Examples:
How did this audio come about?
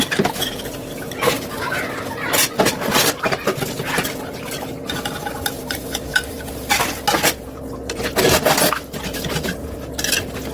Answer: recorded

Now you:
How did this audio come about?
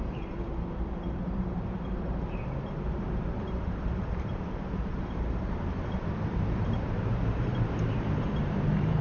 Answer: remade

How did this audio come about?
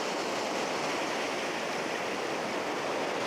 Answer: recorded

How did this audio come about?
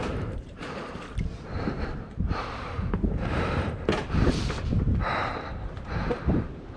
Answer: remade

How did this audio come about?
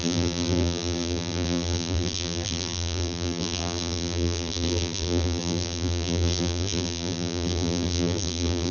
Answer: remade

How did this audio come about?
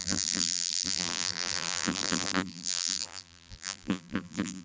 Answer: remade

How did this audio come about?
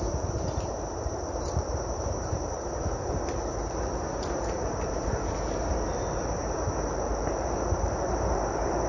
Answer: remade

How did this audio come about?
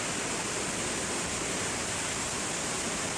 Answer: recorded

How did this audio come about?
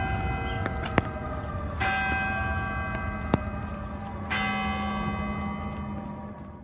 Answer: recorded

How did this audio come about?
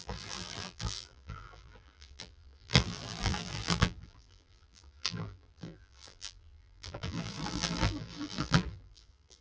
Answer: remade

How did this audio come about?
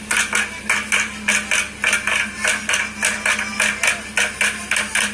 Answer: recorded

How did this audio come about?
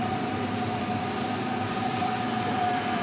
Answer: remade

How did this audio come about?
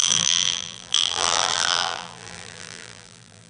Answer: remade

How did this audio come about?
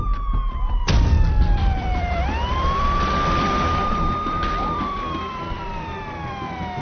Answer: remade